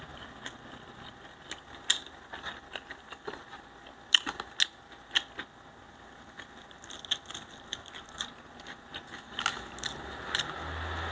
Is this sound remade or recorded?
recorded